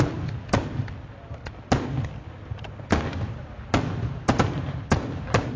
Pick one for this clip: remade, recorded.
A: recorded